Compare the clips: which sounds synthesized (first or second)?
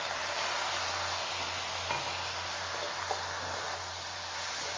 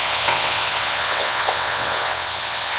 second